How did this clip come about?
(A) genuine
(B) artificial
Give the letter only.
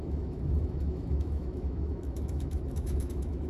B